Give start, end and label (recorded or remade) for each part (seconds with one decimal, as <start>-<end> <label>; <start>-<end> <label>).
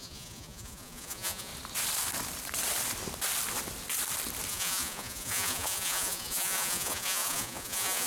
0.0-1.5 remade; 1.5-4.5 recorded; 4.5-8.1 remade